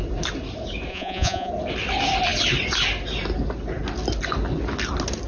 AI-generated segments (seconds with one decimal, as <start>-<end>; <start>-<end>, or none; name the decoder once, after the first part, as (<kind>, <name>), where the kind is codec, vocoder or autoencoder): 0.9-1.5 (vocoder, Vocos)